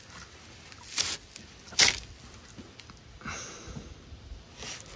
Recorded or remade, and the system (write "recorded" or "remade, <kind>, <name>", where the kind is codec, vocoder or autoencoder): recorded